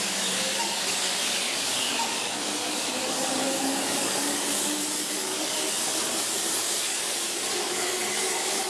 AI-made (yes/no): yes